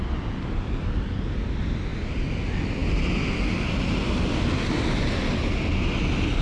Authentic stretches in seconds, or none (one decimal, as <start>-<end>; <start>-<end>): 0.0-6.4